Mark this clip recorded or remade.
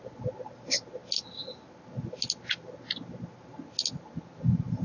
recorded